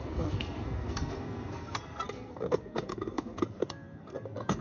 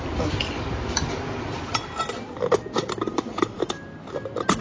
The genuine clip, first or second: second